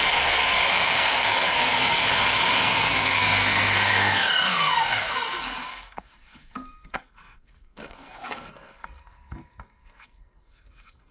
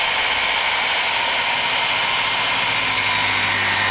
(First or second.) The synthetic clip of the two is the first